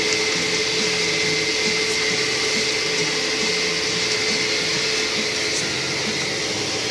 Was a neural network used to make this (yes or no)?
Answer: no